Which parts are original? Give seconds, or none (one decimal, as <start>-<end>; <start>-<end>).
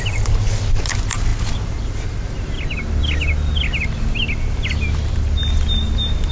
0.0-6.3